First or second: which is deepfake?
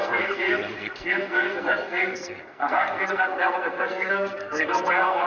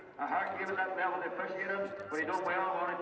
first